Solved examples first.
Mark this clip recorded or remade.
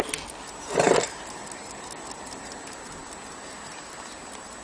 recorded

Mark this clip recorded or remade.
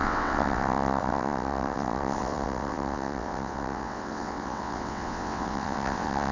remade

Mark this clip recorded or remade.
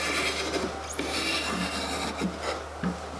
recorded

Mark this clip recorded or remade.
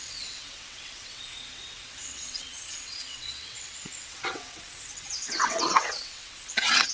remade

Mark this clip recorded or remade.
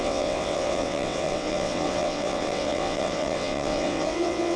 remade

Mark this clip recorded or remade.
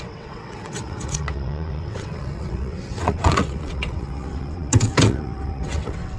remade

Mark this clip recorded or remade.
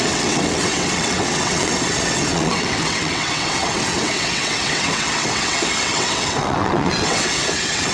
remade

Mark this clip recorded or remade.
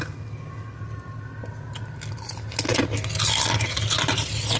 recorded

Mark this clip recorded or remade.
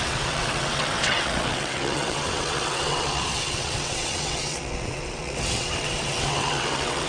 remade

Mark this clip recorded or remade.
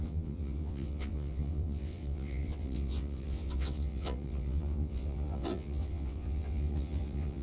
remade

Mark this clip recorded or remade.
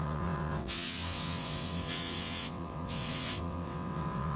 remade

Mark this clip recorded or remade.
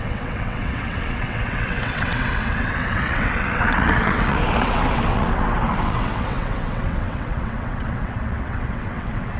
remade